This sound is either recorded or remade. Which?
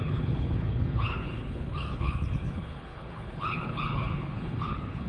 remade